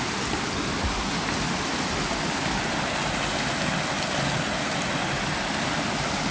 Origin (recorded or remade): recorded